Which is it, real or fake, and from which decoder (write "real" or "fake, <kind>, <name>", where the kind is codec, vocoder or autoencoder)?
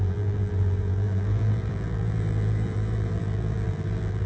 fake, vocoder, BigVGAN v2